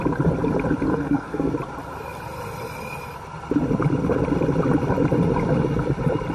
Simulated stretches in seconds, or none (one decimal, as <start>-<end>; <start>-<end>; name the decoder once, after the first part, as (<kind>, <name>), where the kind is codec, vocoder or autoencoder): 0.9-1.5 (codec, SNAC)